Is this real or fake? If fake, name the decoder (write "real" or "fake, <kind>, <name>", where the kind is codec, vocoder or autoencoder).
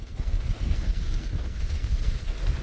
fake, codec, SNAC